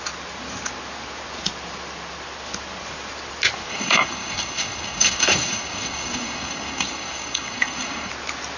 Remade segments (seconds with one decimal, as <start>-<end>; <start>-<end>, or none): 3.7-8.1